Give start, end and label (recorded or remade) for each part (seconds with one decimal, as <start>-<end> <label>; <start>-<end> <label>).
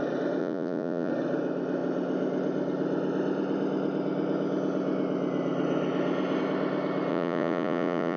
0.0-0.4 recorded; 0.4-1.1 remade; 1.1-7.1 recorded; 7.1-8.2 remade